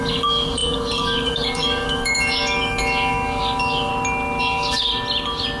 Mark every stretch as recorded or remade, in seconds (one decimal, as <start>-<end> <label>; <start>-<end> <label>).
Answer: 0.0-3.9 remade; 3.9-4.4 recorded; 4.4-4.9 remade; 4.9-5.6 recorded